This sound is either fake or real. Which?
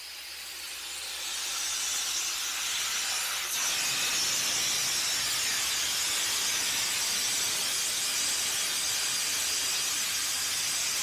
real